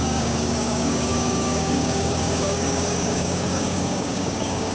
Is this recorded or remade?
remade